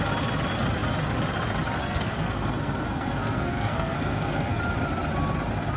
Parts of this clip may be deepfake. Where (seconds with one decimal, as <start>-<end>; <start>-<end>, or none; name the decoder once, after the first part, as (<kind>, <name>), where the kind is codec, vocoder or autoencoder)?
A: 1.8-4.6 (codec, SNAC)